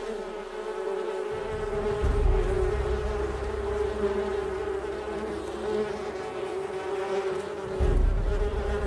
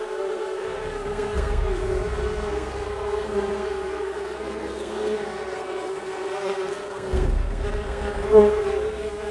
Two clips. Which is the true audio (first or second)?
first